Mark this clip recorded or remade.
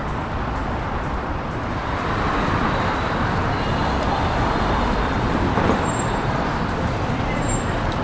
remade